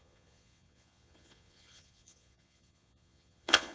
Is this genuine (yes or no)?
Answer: no